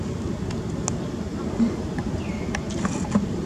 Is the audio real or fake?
real